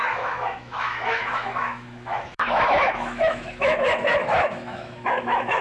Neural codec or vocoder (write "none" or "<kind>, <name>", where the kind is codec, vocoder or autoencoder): autoencoder, DAC-VAE